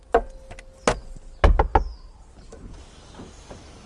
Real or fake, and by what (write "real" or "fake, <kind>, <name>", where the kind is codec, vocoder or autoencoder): real